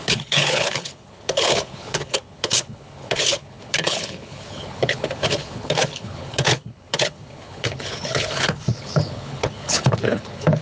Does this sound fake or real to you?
fake